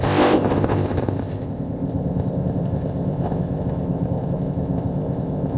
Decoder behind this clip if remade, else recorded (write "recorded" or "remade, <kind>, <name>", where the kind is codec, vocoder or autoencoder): remade, codec, ZipCodec